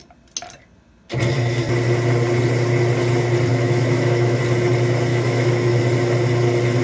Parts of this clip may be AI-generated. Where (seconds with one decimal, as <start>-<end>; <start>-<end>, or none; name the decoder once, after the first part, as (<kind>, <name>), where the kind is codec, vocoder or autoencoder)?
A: 3.5-4.4 (autoencoder, DAC-VAE); 5.1-5.8